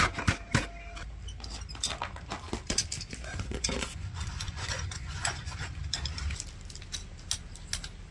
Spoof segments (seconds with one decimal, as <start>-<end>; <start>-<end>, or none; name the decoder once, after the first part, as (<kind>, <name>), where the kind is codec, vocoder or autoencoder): 3.3-5.8 (vocoder, Vocos)